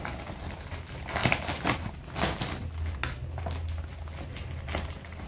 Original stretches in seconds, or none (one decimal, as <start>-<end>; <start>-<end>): 0.0-5.3